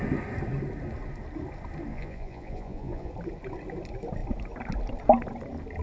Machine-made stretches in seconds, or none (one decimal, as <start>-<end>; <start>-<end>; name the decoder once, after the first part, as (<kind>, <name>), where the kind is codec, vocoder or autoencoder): 1.9-3.1 (vocoder, Vocos)